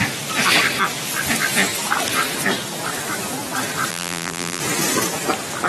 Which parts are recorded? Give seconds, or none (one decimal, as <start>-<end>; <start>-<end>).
0.0-3.9; 4.6-5.7